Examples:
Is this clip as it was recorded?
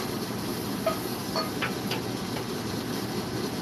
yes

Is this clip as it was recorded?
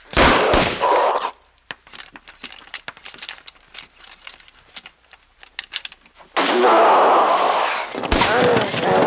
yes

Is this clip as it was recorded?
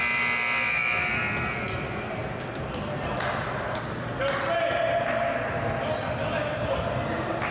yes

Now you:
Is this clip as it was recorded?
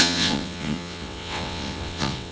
no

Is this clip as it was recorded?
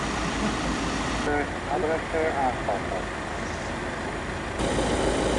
yes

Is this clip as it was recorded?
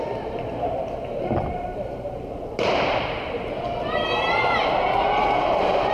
no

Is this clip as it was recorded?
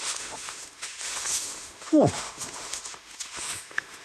no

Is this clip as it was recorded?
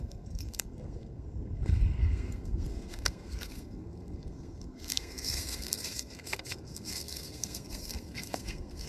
no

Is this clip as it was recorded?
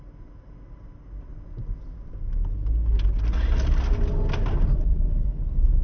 yes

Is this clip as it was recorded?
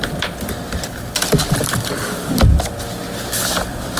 yes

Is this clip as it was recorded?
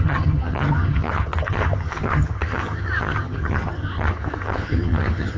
no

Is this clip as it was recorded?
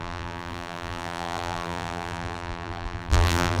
no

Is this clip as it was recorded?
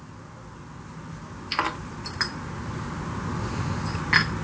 yes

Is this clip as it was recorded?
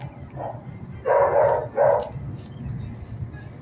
yes